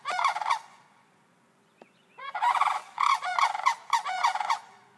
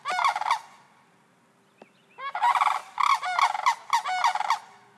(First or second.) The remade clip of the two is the first